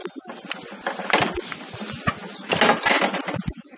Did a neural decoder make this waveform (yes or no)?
no